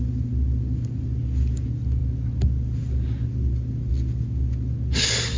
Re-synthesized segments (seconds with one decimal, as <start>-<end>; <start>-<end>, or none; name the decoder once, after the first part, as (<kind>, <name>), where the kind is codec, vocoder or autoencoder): none